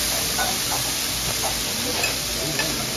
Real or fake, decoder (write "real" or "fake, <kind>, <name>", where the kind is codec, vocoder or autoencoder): real